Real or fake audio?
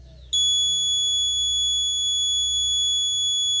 real